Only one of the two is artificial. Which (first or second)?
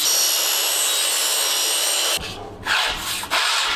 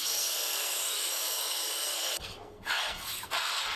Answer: second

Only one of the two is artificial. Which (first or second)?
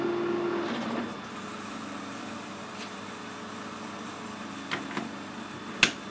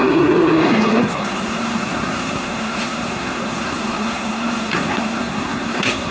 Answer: second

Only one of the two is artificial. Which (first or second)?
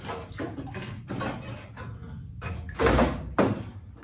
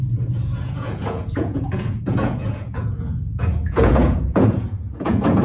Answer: second